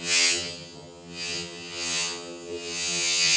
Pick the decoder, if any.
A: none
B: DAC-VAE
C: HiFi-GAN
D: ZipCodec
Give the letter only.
C